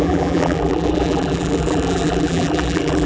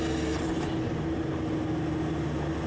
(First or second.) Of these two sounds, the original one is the second